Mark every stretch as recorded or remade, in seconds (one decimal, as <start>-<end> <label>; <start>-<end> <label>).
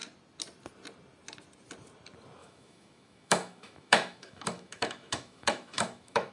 0.0-2.4 recorded; 2.4-6.3 remade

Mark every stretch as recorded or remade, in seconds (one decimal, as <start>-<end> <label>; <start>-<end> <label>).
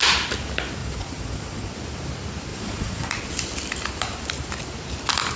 0.0-0.8 recorded; 0.8-1.7 remade; 1.7-2.5 recorded; 2.5-3.2 remade; 3.2-5.4 recorded